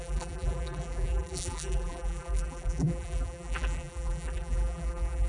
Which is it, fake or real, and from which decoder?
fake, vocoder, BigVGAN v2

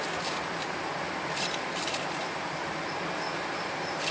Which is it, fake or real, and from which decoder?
real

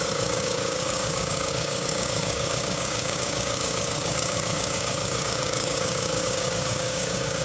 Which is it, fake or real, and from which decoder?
fake, codec, DAC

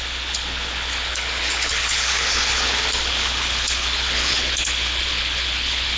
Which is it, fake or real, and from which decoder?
fake, codec, HILCodec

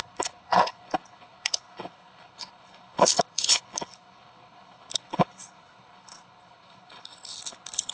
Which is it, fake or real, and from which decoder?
fake, codec, HILCodec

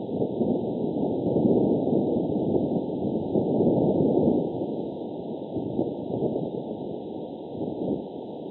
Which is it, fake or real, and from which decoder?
real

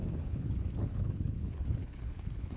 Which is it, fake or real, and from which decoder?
fake, codec, HILCodec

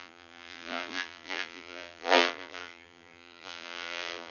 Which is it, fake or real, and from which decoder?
fake, vocoder, BigVGAN v2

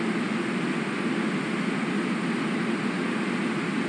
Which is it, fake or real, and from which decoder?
real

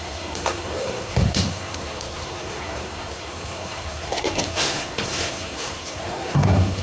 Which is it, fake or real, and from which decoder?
fake, codec, SNAC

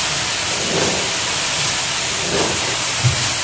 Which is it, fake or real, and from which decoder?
real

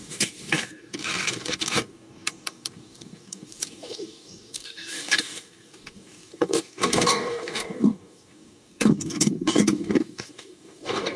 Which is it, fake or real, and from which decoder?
fake, codec, DAC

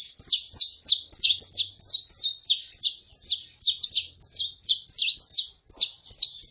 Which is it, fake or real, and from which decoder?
real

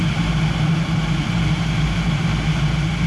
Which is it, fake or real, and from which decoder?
real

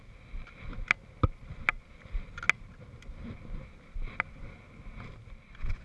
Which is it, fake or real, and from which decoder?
real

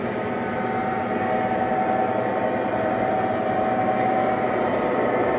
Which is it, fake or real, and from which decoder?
real